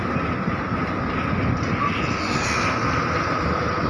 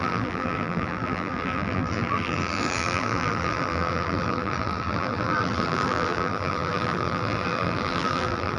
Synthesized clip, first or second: second